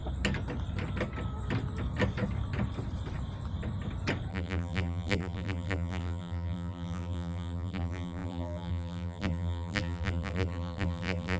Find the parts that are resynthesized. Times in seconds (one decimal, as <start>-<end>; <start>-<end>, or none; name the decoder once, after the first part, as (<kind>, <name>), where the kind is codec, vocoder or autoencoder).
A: 4.3-11.4 (vocoder, BigVGAN v2)